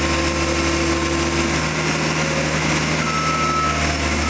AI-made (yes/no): no